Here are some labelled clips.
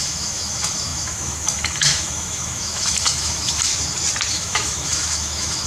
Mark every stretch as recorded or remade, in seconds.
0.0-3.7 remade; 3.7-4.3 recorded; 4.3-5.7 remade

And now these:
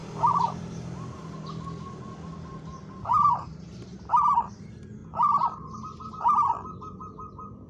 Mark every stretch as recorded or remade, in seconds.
0.0-1.2 remade; 1.2-3.1 recorded; 3.1-4.5 remade; 4.5-7.7 recorded

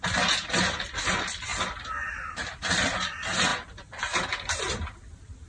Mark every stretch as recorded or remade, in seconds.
0.0-5.5 recorded

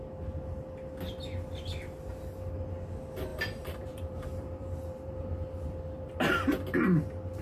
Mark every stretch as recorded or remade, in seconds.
0.0-3.3 recorded; 3.3-5.3 remade; 5.3-7.4 recorded

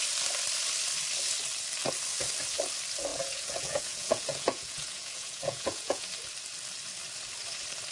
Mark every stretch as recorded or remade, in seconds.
0.0-3.1 recorded; 3.1-6.1 remade; 6.1-7.9 recorded

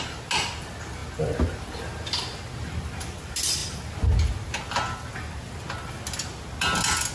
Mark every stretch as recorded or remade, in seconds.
0.0-7.1 recorded

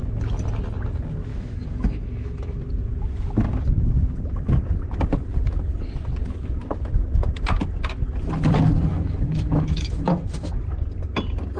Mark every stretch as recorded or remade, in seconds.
0.0-1.3 recorded; 1.3-2.6 remade; 2.6-8.9 recorded; 8.9-10.5 remade; 10.5-11.6 recorded

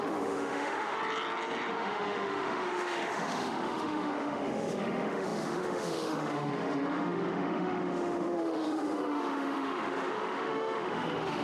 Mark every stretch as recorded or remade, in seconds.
0.0-1.0 remade; 1.0-1.7 recorded; 1.7-11.4 remade